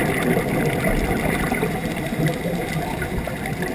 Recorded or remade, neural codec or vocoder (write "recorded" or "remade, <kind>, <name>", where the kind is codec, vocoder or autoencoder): recorded